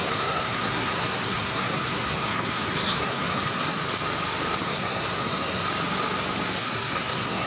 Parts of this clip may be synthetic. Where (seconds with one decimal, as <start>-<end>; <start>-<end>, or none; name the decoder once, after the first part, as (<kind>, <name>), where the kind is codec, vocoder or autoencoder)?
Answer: 0.0-3.8 (codec, SNAC); 4.6-5.6; 6.6-7.5

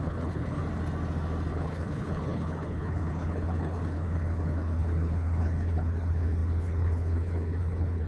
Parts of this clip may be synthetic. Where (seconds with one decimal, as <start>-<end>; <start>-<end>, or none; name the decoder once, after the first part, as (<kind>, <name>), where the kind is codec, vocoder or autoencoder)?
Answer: 0.0-0.6 (codec, HILCodec); 1.5-8.1

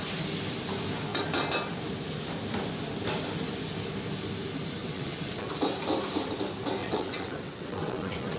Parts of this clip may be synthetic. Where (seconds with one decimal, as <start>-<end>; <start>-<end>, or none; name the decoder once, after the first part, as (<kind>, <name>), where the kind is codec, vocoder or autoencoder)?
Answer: 4.8-5.5 (vocoder, WaveNeXt); 6.8-8.4